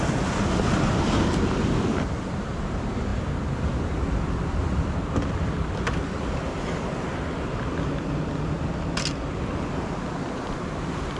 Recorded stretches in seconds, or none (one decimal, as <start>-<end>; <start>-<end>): 0.0-11.2